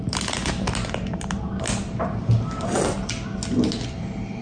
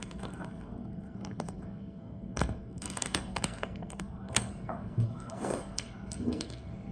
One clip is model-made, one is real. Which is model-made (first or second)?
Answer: second